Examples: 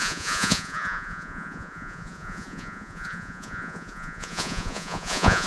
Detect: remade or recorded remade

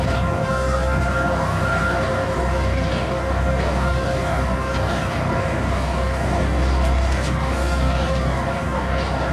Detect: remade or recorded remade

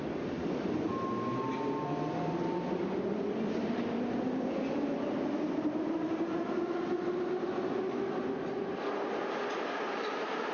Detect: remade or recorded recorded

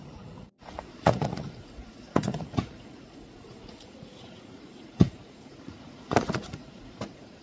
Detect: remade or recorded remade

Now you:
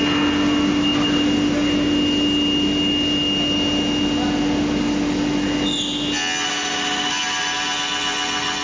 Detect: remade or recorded recorded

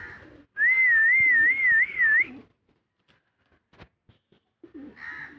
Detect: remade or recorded recorded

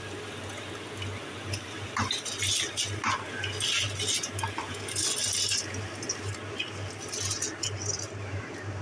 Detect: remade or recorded recorded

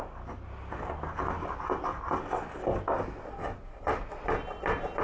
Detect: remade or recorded recorded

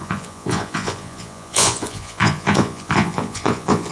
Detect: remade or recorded remade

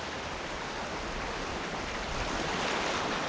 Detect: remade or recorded recorded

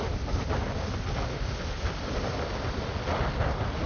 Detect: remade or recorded recorded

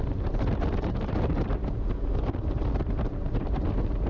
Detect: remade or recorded remade